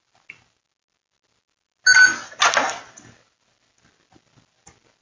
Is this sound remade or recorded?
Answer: recorded